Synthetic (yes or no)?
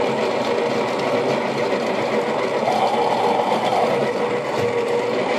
no